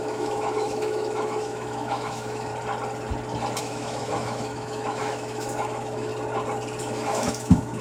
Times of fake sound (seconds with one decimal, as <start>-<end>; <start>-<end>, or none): 0.0-2.5; 3.6-6.1; 6.8-7.8